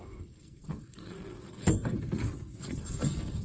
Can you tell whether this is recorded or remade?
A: remade